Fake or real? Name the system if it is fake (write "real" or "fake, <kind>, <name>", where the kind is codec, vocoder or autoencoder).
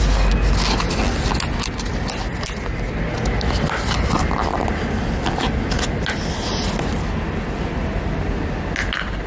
real